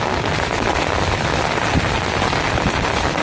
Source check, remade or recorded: recorded